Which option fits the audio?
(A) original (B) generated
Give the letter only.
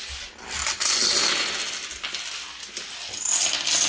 A